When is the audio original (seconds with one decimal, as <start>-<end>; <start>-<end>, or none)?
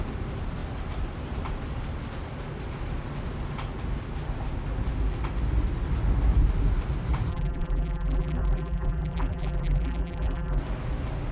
0.0-7.3; 10.6-11.3